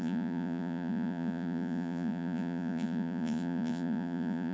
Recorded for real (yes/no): no